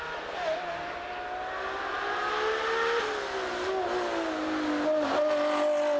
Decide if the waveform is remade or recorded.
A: recorded